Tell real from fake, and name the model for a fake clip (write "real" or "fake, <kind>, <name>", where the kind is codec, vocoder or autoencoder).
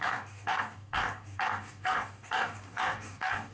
fake, codec, DAC